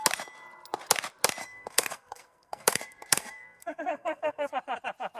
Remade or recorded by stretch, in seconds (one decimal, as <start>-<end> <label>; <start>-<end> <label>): 0.0-1.4 recorded; 1.4-4.5 remade; 4.5-5.2 recorded